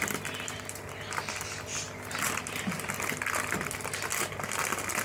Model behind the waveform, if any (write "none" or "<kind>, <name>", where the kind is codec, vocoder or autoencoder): none